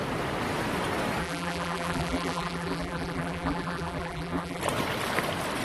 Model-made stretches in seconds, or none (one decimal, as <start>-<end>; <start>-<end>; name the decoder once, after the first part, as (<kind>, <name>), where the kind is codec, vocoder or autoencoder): 1.2-4.6 (vocoder, BigVGAN v2)